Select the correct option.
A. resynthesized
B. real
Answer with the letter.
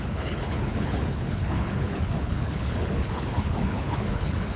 A